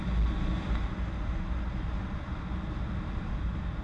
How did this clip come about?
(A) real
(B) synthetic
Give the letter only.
A